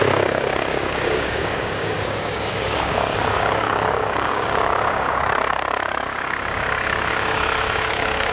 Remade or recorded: remade